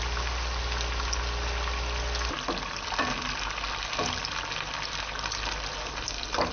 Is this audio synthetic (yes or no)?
no